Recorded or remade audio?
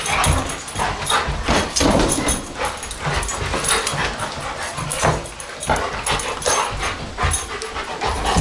recorded